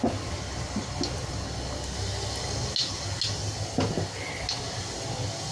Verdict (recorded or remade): recorded